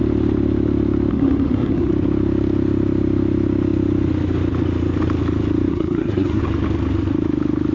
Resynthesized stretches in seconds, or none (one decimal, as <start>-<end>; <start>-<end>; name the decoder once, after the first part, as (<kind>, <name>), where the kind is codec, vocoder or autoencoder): 1.1-1.9 (codec, SNAC); 5.7-6.4